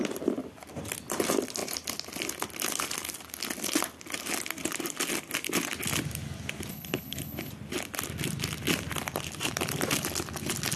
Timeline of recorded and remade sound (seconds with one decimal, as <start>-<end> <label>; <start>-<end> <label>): 0.0-6.7 recorded; 6.7-7.5 remade; 7.5-10.8 recorded